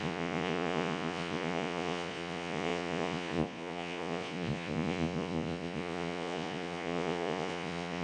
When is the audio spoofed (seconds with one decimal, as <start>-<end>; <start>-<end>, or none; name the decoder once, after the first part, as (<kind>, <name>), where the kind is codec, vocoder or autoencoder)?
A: 0.0-8.0 (vocoder, Vocos)